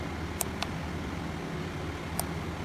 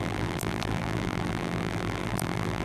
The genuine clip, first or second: first